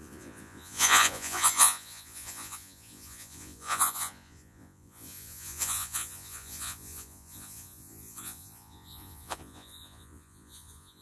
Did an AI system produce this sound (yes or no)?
yes